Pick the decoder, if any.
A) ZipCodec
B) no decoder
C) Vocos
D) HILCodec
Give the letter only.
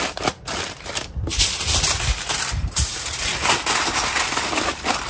B